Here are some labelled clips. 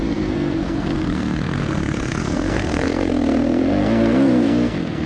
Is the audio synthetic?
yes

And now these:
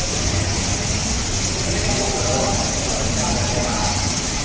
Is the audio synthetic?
no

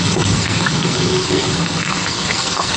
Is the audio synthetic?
yes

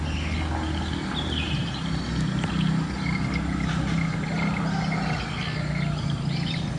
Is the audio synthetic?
no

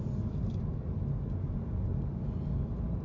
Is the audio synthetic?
no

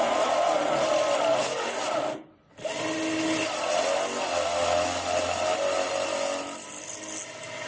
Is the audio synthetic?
no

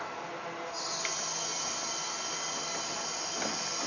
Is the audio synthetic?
no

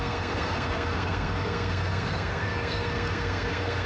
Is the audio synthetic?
yes